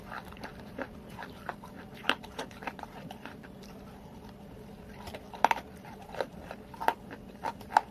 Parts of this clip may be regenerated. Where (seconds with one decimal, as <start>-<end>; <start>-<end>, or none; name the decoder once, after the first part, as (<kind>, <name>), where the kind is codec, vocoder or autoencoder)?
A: 0.0-7.9 (vocoder, BigVGAN v2)